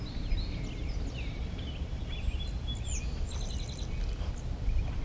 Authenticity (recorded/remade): recorded